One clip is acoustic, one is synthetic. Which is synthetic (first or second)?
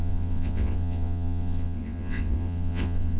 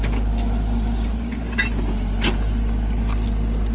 first